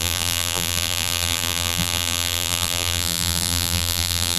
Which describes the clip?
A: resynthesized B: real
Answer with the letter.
A